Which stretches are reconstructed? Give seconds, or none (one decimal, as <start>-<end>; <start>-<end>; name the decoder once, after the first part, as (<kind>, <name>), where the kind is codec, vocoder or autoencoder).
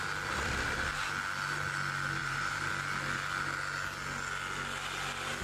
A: 2.2-2.7 (vocoder, BigVGAN v2)